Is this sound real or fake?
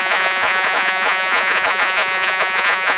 fake